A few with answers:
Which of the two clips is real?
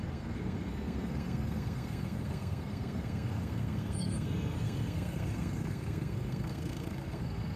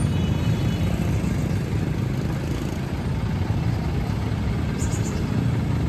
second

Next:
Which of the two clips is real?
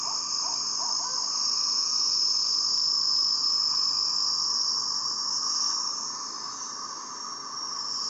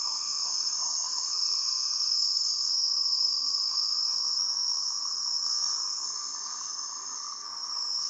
first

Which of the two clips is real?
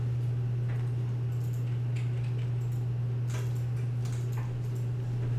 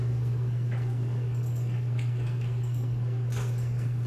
first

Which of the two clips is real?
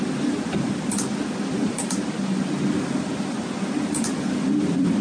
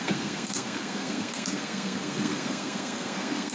first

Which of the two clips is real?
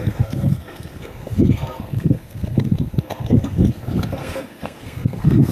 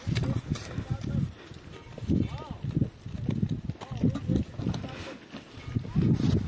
second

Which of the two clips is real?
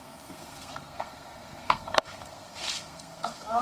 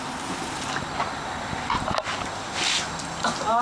second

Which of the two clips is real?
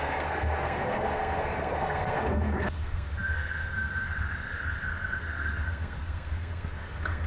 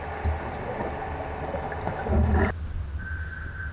second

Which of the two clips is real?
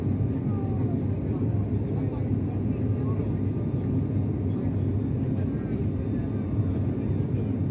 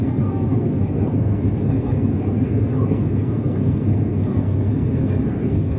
first